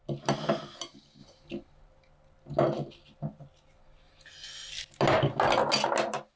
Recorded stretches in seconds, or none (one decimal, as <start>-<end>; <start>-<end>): 0.0-6.4